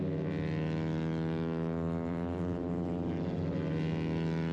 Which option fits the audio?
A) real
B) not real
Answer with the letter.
A